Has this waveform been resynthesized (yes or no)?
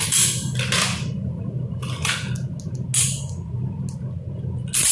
no